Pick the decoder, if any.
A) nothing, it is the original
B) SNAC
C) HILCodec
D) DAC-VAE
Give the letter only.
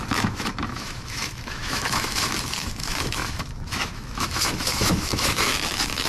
D